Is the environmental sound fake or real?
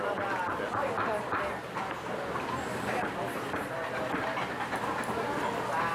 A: real